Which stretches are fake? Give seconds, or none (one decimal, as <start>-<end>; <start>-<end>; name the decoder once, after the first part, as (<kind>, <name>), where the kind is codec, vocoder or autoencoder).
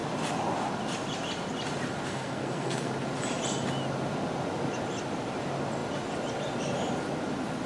2.1-2.9 (codec, SNAC)